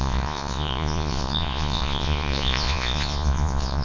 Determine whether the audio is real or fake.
fake